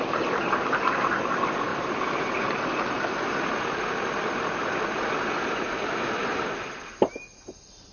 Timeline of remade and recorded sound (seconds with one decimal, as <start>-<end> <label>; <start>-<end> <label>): 0.0-7.9 recorded